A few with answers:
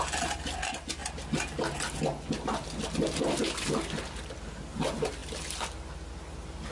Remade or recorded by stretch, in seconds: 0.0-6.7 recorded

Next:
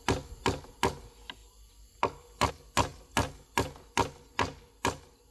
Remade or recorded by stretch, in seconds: 0.0-5.3 recorded

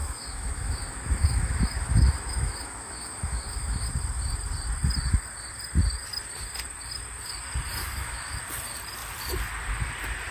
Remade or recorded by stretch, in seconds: 0.0-3.9 remade; 3.9-7.8 recorded; 7.8-8.4 remade; 8.4-10.3 recorded

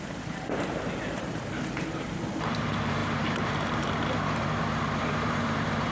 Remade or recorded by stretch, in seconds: 0.0-5.9 remade

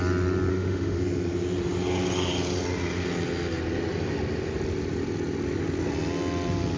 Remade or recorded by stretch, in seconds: 0.0-0.5 recorded; 0.5-1.0 remade; 1.0-6.8 recorded

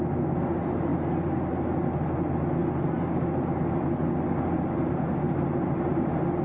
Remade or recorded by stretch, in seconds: 0.0-6.4 recorded

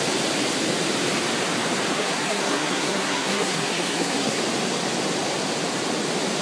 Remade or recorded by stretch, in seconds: 0.0-1.9 recorded; 1.9-4.4 remade; 4.4-6.4 recorded